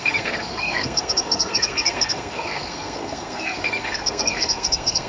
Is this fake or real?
fake